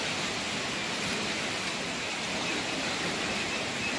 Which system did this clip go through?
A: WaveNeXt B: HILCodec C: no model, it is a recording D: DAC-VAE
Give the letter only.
C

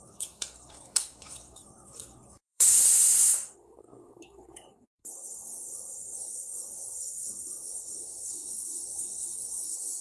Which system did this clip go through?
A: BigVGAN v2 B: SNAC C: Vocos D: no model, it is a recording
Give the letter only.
B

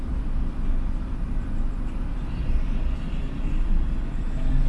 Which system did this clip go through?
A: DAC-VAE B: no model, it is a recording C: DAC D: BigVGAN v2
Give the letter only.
D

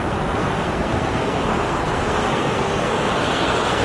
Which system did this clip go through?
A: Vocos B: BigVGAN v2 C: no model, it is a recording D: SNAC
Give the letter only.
D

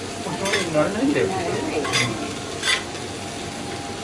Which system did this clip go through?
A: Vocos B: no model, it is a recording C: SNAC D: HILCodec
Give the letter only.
B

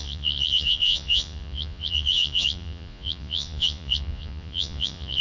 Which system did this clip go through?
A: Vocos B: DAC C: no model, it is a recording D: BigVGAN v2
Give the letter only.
A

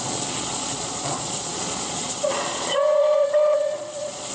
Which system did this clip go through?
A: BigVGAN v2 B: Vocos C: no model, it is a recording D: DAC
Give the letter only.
B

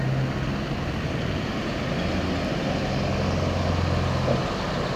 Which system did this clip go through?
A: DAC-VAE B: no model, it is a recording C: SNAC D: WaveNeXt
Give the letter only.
B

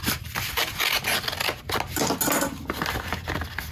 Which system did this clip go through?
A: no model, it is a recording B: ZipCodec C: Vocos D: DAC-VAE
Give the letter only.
A